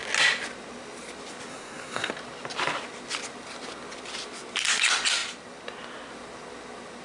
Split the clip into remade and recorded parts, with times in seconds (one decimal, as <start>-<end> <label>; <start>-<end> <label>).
0.0-1.5 recorded; 1.5-2.1 remade; 2.1-7.0 recorded